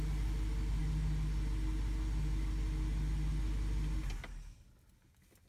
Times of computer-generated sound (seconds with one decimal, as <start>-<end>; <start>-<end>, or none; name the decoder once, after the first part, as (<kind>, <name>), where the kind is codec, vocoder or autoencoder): none